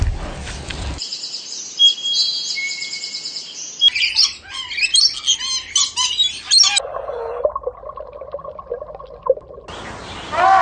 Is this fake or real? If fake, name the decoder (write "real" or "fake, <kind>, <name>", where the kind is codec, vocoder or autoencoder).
real